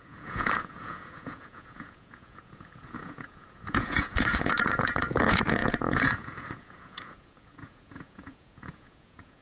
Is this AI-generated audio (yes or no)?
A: yes